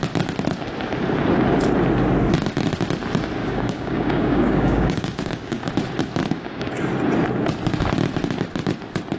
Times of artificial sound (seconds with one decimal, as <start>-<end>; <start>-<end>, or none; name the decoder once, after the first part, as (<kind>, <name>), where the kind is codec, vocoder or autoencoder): 3.4-5.7 (codec, DAC); 6.2-6.8